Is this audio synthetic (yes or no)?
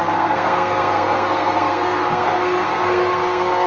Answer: yes